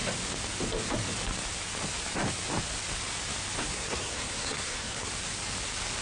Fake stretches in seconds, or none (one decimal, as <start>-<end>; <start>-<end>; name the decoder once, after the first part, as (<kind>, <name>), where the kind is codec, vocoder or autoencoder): 3.6-5.1 (codec, SNAC)